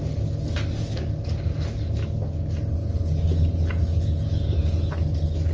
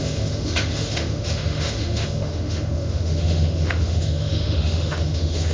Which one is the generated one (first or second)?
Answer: second